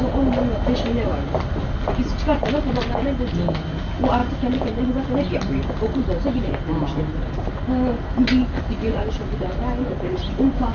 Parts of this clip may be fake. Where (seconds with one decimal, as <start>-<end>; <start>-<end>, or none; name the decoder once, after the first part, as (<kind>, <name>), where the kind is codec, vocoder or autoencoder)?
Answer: none